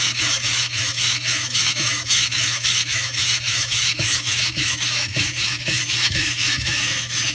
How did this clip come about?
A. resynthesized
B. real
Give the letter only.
A